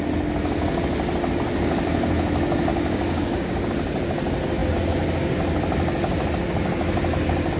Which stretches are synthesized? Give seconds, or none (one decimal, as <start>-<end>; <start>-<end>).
2.7-3.6

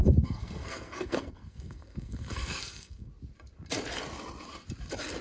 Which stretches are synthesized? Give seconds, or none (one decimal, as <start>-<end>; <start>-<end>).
0.0-3.1

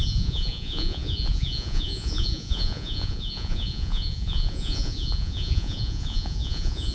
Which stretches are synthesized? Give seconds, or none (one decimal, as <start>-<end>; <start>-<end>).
0.0-6.9

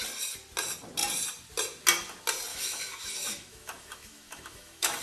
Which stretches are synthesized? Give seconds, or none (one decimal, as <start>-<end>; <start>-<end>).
2.5-5.0

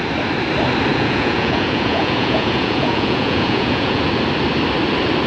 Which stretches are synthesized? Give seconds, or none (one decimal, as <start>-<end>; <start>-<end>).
0.9-4.1

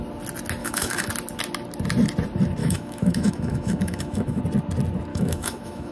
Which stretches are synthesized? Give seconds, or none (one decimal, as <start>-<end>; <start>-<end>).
0.6-1.1; 2.6-4.4; 5.1-5.9